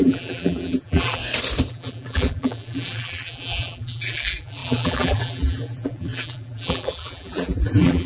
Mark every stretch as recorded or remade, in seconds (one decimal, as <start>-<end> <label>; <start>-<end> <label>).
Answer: 0.0-1.2 remade; 1.2-1.7 recorded; 1.7-8.1 remade